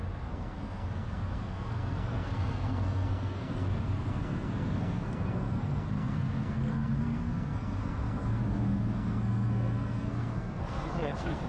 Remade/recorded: remade